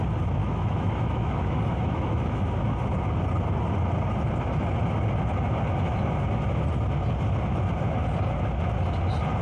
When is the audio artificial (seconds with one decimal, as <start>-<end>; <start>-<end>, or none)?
0.4-2.4